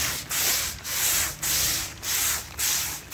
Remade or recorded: recorded